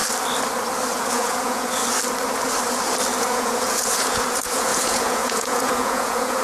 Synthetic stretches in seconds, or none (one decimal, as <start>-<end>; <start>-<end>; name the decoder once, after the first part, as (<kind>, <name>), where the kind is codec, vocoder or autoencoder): 0.9-1.8 (vocoder, Vocos); 3.2-6.4